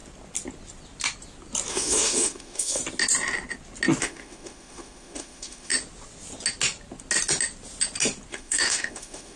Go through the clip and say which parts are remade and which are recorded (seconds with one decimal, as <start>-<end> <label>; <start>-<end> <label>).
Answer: 0.0-1.7 recorded; 1.7-2.8 remade; 2.8-4.0 recorded; 4.0-5.7 remade; 5.7-8.3 recorded; 8.3-9.4 remade